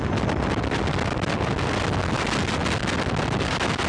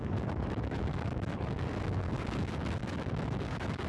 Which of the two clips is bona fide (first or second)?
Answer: first